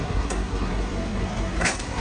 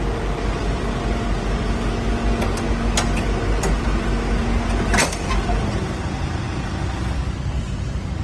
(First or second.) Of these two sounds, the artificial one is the first